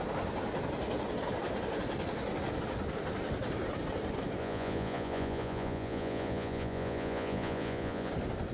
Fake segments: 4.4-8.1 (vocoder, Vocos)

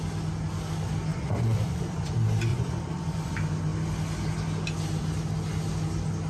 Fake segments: 1.1-2.1 (vocoder, Vocos); 2.5-3.3

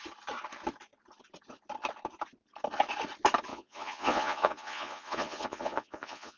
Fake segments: 3.5-6.4 (vocoder, Vocos)

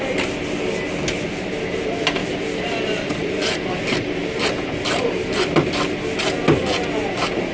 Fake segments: none